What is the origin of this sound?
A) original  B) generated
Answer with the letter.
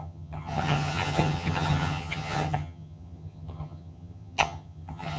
B